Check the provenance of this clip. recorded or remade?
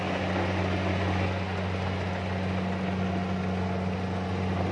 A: recorded